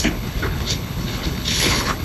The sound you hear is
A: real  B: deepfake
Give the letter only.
B